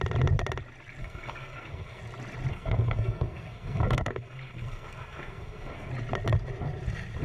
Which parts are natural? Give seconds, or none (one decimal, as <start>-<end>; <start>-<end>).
0.0-1.0; 2.0-2.5; 5.9-7.2

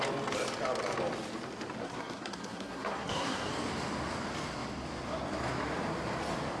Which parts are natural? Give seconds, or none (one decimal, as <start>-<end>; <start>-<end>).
0.0-1.8; 3.5-6.6

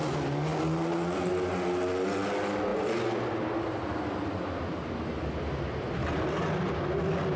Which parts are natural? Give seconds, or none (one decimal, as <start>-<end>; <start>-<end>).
0.0-7.4

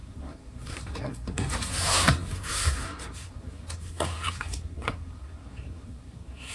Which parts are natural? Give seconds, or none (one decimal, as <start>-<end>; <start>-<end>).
none

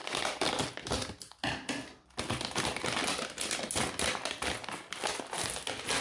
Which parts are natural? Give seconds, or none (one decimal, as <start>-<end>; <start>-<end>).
0.0-6.0

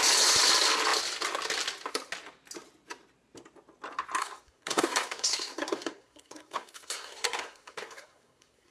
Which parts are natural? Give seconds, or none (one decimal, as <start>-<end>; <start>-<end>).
0.0-4.2

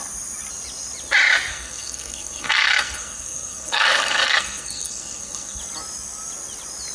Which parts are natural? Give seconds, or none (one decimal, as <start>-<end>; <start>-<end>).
0.0-1.5; 5.6-6.9